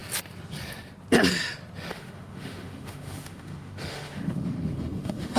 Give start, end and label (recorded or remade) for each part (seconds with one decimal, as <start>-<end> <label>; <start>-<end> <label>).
0.0-1.9 recorded; 1.9-5.4 remade